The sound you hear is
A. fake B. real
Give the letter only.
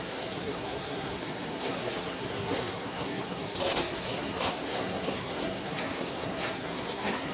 A